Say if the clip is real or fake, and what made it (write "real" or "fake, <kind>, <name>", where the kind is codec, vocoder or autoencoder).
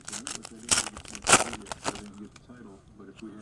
real